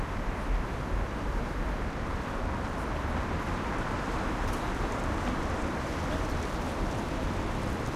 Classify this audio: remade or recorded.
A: remade